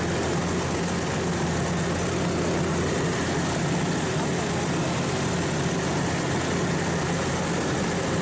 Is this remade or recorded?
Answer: recorded